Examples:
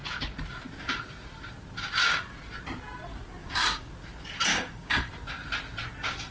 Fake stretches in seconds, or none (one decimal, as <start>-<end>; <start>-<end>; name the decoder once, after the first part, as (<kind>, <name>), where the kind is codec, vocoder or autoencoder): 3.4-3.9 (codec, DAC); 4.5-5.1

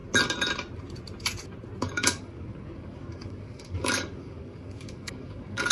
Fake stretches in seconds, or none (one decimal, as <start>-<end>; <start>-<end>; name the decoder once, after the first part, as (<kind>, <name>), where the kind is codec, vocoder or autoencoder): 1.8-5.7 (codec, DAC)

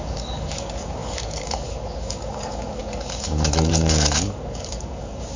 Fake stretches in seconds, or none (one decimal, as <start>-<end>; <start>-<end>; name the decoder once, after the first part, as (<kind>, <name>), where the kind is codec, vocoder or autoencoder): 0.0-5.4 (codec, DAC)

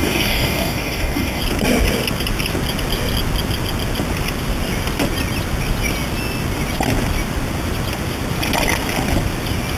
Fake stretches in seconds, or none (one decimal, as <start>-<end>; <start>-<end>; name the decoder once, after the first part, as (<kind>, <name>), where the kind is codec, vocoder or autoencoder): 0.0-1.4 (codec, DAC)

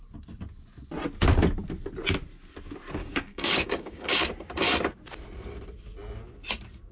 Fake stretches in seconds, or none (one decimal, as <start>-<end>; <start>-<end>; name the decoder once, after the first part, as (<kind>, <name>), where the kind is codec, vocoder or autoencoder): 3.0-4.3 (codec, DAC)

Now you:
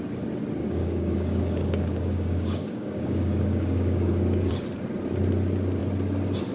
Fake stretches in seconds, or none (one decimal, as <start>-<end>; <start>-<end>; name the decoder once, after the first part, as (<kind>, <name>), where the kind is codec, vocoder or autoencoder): 0.6-4.5 (codec, DAC)

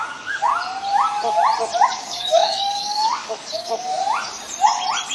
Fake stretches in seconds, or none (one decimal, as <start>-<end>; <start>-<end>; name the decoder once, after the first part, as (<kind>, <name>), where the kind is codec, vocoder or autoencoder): 0.0-0.5 (codec, DAC); 1.9-4.0